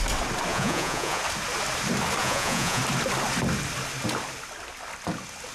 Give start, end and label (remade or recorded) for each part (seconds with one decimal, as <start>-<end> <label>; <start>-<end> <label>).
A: 0.0-0.5 recorded; 0.5-1.2 remade; 1.2-2.2 recorded; 2.2-2.8 remade; 2.8-5.5 recorded